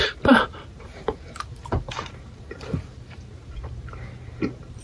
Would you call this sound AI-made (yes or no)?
yes